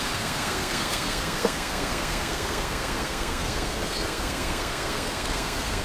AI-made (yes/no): yes